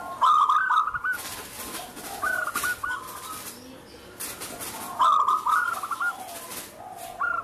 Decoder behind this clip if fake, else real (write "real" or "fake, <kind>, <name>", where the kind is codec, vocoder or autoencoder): real